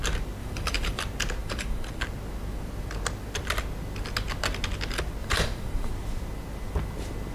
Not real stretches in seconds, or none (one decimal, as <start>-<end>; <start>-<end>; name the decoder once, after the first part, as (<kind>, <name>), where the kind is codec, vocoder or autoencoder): 0.4-1.0 (vocoder, BigVGAN v2); 1.4-2.0; 5.2-5.9